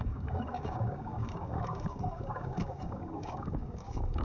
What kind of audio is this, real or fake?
fake